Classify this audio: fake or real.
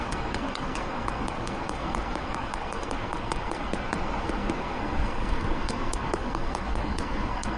fake